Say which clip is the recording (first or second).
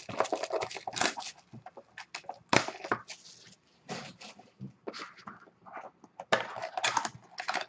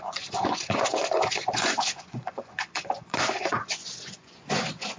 first